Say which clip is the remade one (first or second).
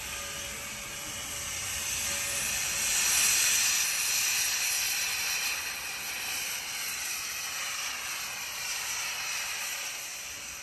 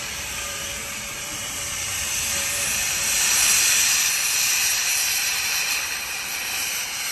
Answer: second